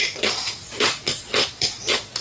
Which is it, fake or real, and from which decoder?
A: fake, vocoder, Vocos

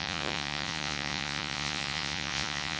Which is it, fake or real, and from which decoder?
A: fake, vocoder, Vocos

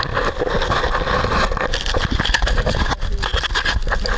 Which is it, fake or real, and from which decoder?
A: real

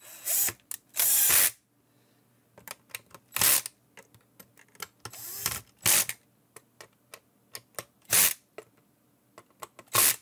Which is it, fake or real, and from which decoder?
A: real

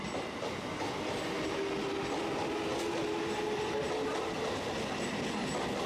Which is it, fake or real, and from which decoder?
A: real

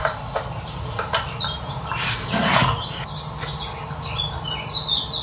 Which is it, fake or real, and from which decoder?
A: real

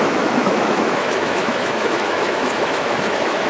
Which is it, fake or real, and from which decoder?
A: fake, autoencoder, DAC-VAE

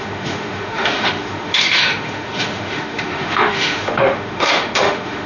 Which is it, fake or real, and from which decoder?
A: fake, autoencoder, DAC-VAE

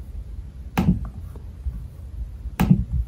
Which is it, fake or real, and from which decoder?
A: real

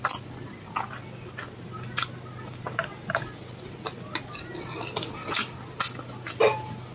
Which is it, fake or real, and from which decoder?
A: real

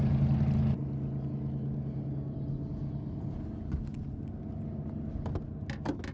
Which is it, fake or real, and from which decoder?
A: real